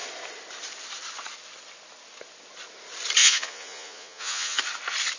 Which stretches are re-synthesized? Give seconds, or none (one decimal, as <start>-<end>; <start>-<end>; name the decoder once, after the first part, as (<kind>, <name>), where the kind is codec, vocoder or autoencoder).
3.2-4.6 (vocoder, Vocos)